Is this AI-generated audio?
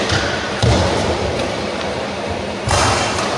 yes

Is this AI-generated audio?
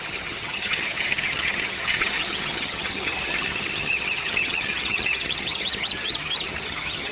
yes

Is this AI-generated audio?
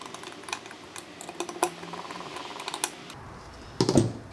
no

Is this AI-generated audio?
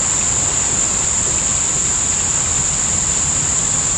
no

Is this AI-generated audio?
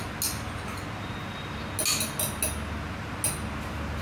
no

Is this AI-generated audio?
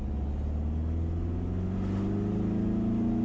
no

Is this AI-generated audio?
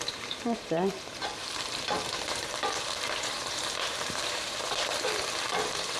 yes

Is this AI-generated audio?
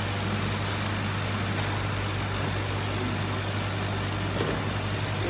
no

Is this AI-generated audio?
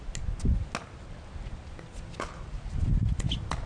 no